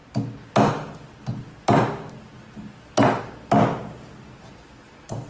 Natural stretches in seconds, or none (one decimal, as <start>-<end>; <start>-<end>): 0.0-5.3